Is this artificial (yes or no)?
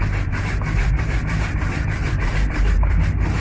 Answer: yes